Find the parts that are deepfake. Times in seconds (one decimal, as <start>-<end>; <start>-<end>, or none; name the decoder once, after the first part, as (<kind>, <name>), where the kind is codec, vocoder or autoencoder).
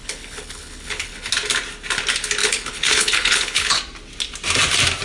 0.0-1.3 (codec, HILCodec); 2.4-3.8